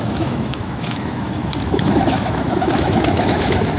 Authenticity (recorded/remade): remade